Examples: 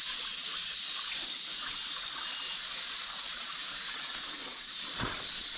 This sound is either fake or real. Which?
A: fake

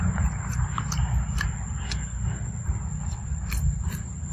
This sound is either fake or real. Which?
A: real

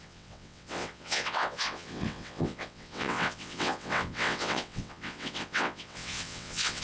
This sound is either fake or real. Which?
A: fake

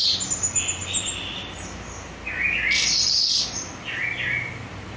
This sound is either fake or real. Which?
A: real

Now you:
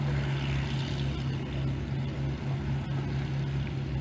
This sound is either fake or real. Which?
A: real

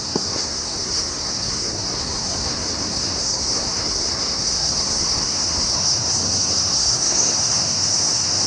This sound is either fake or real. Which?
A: fake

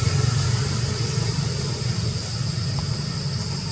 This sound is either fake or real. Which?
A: real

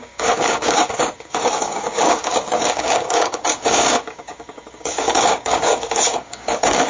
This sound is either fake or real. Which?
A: fake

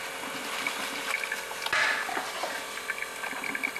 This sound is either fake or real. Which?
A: real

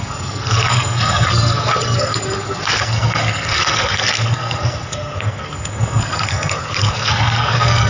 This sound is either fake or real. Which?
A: fake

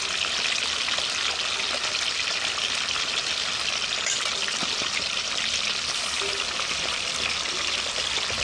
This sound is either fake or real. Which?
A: real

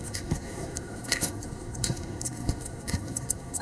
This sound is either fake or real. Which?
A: fake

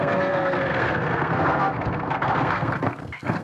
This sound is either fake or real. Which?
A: fake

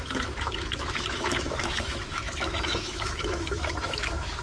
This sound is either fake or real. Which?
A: fake